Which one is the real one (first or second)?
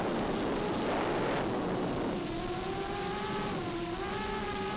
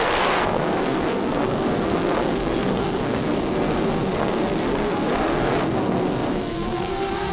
first